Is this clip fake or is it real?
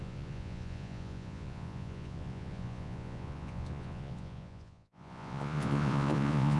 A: fake